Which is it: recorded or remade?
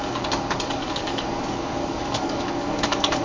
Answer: remade